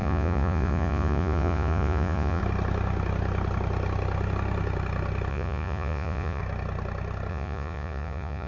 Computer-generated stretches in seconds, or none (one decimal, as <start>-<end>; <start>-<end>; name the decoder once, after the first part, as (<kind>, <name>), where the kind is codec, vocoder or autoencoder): 0.0-2.4 (vocoder, Vocos); 5.3-6.4; 7.3-8.5